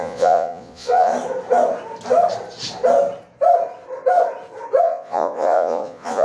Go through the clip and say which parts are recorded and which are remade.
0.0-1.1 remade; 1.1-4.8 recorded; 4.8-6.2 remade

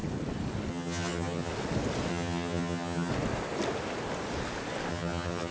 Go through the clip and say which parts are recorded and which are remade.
0.0-0.7 recorded; 0.7-1.5 remade; 1.5-2.1 recorded; 2.1-3.1 remade; 3.1-4.9 recorded; 4.9-5.5 remade

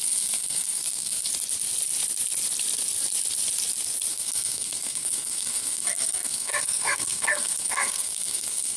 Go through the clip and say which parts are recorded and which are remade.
0.0-1.3 remade; 1.3-4.1 recorded; 4.1-8.8 remade

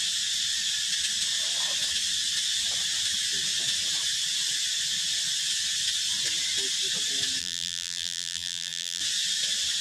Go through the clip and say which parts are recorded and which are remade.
0.0-7.4 recorded; 7.4-9.0 remade; 9.0-9.8 recorded